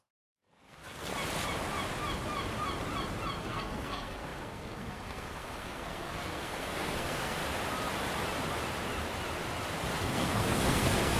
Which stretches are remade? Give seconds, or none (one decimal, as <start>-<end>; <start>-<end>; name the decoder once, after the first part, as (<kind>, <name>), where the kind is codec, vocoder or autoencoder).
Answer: 0.0-1.1 (codec, SNAC); 3.4-7.4; 10.0-11.2